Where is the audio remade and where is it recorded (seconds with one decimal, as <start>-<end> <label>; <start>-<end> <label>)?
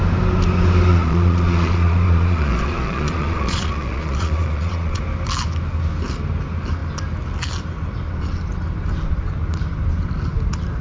0.0-0.9 recorded; 0.9-5.0 remade; 5.0-10.8 recorded